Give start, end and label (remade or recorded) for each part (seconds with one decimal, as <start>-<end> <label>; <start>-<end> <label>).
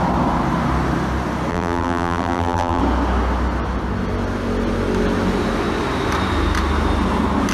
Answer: 0.0-1.5 recorded; 1.5-2.8 remade; 2.8-7.5 recorded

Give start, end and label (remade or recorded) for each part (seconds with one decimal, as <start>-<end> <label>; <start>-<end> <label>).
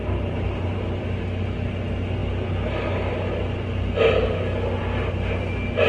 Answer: 0.0-1.0 remade; 1.0-5.9 recorded